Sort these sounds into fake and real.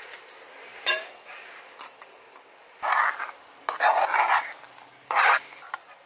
real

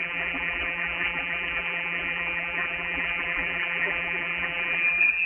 fake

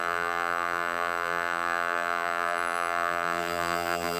fake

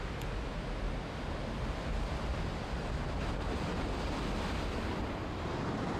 real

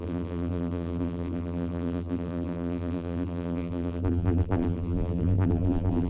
fake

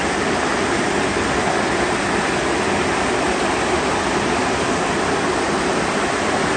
real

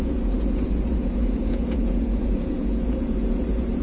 fake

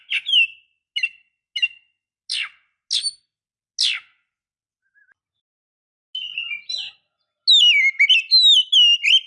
real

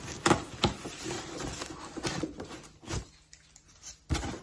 real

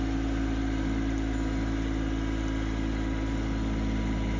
real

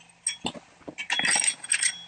real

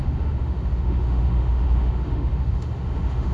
fake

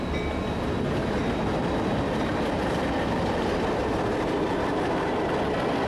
real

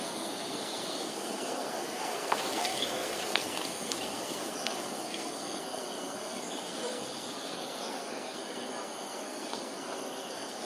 fake